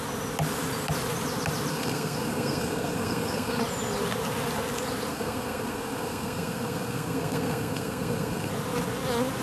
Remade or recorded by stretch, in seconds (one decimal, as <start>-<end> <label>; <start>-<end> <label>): 0.0-1.7 recorded; 1.7-3.6 remade; 3.6-5.1 recorded; 5.1-8.5 remade; 8.5-9.4 recorded